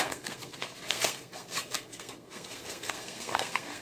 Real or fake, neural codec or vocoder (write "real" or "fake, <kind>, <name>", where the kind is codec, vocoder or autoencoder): fake, codec, SNAC